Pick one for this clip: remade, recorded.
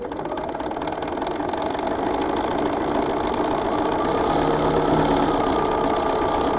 recorded